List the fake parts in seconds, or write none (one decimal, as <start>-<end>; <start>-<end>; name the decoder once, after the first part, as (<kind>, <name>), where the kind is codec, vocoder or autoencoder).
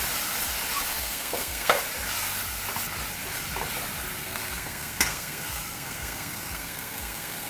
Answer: 0.9-1.8 (codec, SNAC); 4.2-7.5